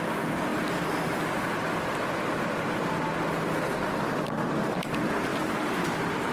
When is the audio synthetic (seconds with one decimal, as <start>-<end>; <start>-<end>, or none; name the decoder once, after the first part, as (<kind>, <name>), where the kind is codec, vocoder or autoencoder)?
none